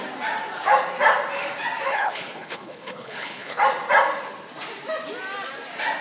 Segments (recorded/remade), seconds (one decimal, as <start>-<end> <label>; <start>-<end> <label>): 0.0-1.9 recorded; 1.9-3.6 remade; 3.6-6.0 recorded